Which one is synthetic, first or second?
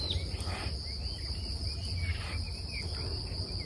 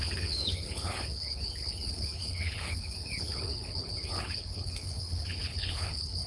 second